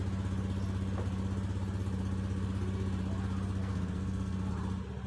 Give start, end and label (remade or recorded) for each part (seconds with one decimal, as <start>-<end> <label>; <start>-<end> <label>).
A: 0.0-3.6 recorded; 3.6-4.5 remade; 4.5-5.1 recorded